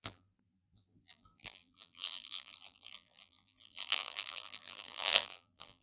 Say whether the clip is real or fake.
fake